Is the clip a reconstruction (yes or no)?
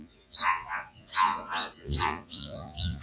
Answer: yes